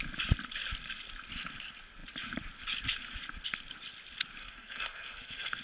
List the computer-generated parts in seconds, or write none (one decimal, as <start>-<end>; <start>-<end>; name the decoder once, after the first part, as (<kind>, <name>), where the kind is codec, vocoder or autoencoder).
4.4-5.6 (codec, SNAC)